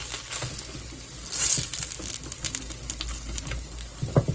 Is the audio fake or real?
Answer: real